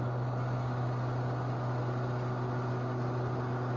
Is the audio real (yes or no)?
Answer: yes